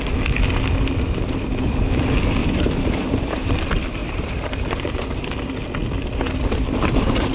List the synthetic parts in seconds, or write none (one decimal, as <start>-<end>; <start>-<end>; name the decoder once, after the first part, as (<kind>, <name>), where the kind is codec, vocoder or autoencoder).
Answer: 2.4-3.5 (vocoder, BigVGAN v2); 4.0-5.3